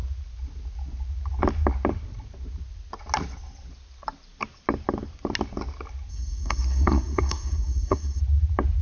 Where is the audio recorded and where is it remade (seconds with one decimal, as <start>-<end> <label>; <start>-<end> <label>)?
0.0-6.1 recorded; 6.1-8.2 remade; 8.2-8.8 recorded